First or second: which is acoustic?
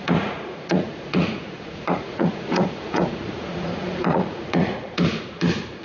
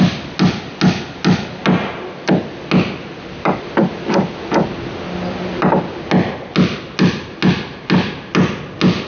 second